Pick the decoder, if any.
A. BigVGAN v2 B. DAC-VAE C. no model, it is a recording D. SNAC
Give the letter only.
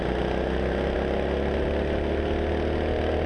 C